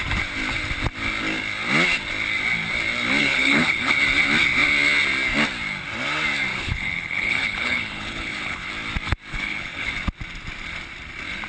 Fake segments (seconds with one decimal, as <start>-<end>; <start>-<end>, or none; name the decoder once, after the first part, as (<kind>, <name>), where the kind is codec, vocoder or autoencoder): 3.2-3.9 (codec, HILCodec); 6.5-8.7; 9.3-9.9

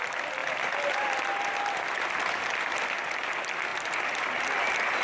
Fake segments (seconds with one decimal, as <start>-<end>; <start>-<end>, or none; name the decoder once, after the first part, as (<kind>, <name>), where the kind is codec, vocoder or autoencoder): none

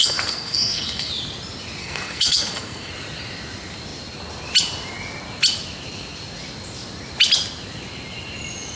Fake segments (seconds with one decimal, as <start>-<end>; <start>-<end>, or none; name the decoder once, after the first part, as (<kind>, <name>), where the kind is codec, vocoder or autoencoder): 0.0-1.1 (codec, SNAC); 1.8-2.9